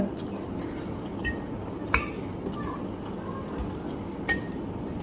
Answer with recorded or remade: recorded